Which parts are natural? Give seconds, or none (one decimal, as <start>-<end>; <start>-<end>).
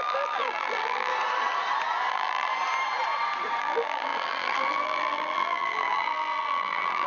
1.1-2.1; 2.5-3.6